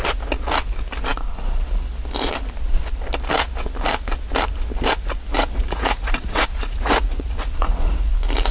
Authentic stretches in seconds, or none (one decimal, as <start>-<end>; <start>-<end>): 0.0-5.3; 8.1-8.5